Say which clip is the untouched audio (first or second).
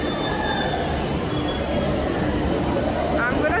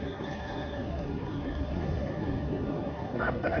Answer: first